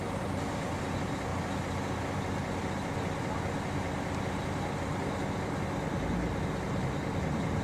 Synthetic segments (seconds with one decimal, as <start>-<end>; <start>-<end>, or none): none